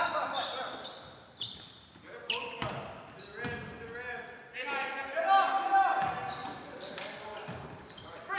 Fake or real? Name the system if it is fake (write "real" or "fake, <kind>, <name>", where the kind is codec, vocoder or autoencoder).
real